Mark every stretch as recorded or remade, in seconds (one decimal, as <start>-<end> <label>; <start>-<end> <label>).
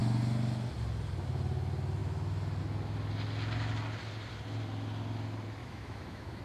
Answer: 0.0-5.6 recorded; 5.6-6.4 remade